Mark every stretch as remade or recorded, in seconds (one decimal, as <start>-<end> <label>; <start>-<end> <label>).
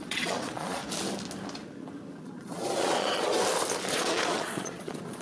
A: 0.0-0.8 remade; 0.8-2.2 recorded; 2.2-3.3 remade; 3.3-3.9 recorded; 3.9-5.2 remade